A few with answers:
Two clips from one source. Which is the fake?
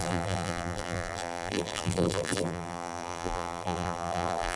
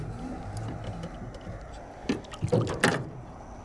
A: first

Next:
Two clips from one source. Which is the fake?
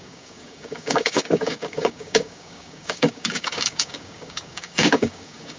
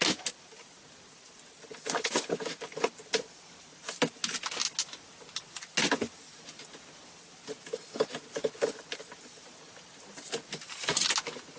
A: first